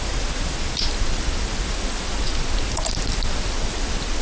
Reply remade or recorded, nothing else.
recorded